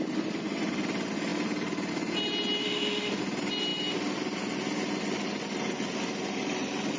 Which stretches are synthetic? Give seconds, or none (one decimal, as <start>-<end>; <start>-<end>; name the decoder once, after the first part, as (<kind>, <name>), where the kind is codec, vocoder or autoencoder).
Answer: 2.6-3.2 (autoencoder, DAC-VAE)